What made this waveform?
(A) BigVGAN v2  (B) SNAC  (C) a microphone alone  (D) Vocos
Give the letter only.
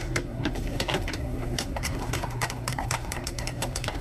B